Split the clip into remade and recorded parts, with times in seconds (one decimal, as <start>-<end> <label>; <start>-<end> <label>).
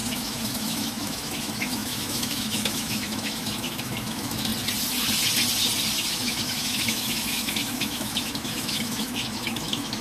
0.0-4.5 remade; 4.5-6.1 recorded; 6.1-10.0 remade